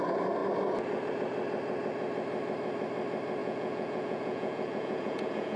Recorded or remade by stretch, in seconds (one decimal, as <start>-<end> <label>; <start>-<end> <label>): 0.0-3.4 recorded; 3.4-5.6 remade